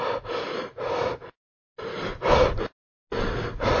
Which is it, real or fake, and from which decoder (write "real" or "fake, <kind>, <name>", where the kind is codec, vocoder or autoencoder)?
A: real